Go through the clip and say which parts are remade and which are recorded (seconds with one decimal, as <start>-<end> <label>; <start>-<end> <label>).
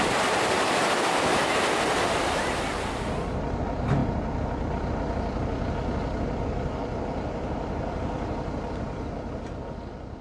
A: 0.0-10.2 recorded